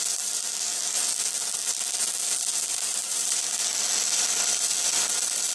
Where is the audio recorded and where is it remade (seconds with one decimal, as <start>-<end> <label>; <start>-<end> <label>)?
0.0-2.7 recorded; 2.7-3.4 remade; 3.4-5.5 recorded